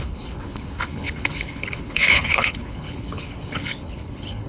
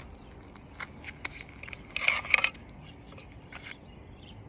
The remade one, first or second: first